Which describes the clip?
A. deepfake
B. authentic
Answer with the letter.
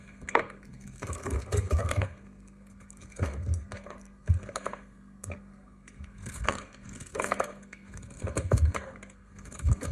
A